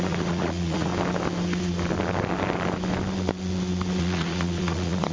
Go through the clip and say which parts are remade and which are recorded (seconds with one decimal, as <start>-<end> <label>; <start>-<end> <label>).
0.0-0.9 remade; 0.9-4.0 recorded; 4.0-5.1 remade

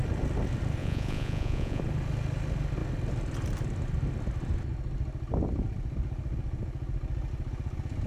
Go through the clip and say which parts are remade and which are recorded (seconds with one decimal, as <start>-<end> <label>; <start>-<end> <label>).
0.0-0.8 recorded; 0.8-1.8 remade; 1.8-8.1 recorded

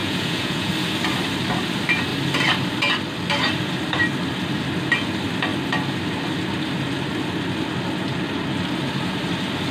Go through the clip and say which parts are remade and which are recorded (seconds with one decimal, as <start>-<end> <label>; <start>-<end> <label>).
0.0-0.7 remade; 0.7-9.7 recorded

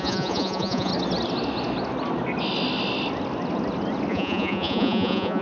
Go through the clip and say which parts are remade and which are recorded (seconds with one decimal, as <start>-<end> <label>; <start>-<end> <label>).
0.0-0.9 remade; 0.9-4.1 recorded; 4.1-5.4 remade

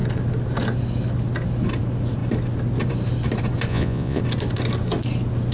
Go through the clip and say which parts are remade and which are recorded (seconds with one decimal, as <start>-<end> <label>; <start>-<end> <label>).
0.0-3.7 recorded; 3.7-4.2 remade; 4.2-5.5 recorded

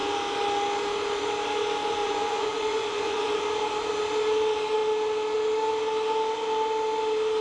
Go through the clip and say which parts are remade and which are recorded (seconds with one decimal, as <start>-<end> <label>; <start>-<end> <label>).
0.0-2.0 recorded; 2.0-3.4 remade; 3.4-7.4 recorded

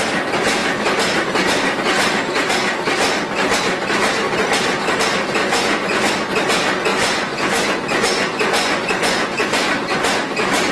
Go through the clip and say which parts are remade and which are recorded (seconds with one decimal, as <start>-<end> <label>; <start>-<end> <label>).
0.0-5.4 recorded; 5.4-6.1 remade; 6.1-6.9 recorded; 6.9-10.2 remade; 10.2-10.7 recorded

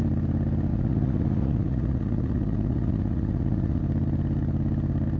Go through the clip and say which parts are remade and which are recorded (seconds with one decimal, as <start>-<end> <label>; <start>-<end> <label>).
0.0-0.7 recorded; 0.7-3.8 remade; 3.8-5.2 recorded